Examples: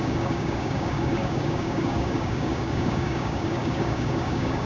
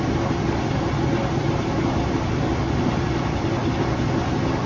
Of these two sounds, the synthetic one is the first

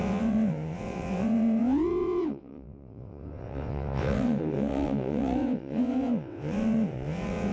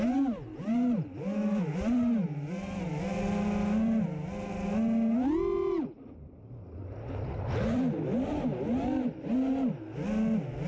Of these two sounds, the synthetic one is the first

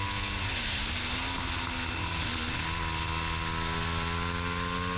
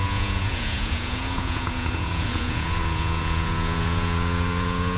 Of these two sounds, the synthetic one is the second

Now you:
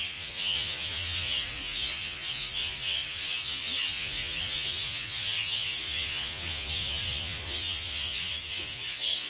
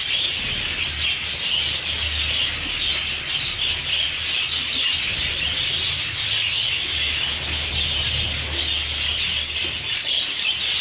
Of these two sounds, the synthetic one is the first